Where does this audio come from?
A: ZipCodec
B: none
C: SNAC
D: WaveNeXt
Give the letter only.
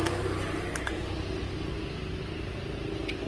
B